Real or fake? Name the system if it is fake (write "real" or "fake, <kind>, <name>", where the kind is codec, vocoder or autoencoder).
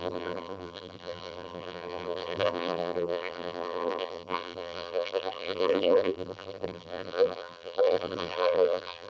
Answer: fake, vocoder, BigVGAN v2